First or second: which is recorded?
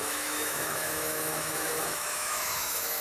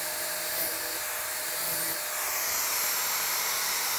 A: second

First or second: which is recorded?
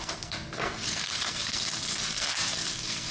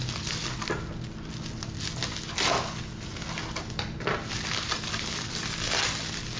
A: second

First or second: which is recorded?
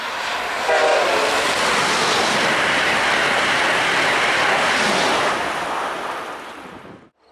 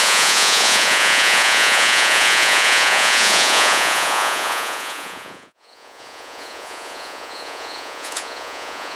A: first